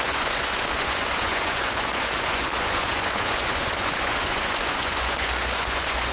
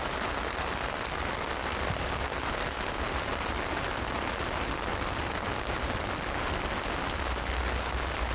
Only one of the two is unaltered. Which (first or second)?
second